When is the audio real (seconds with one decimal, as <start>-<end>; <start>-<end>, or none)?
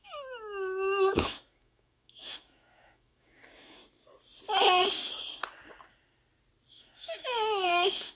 3.8-6.7